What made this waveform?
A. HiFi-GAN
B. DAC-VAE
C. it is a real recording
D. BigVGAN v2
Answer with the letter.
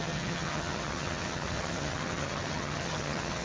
A